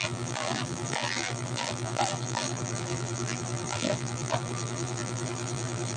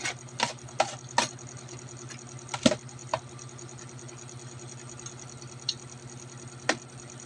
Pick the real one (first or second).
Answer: second